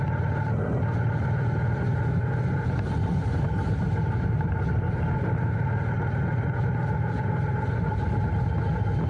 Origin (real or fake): real